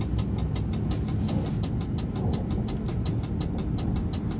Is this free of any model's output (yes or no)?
yes